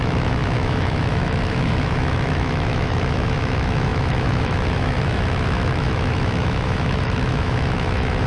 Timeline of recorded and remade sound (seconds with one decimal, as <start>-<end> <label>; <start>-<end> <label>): 0.0-8.3 remade